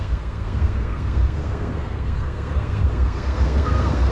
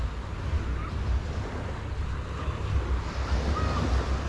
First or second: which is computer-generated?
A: first